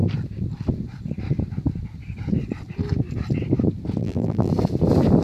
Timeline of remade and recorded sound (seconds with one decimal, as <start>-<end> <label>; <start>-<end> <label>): 0.0-4.0 recorded; 4.0-4.5 remade; 4.5-5.2 recorded